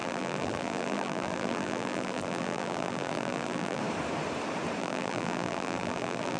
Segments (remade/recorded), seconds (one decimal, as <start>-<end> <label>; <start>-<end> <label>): 0.0-3.8 remade; 3.8-4.8 recorded; 4.8-6.4 remade